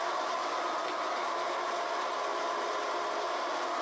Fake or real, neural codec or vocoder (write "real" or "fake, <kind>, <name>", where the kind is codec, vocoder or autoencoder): real